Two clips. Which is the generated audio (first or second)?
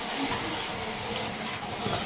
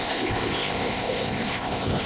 second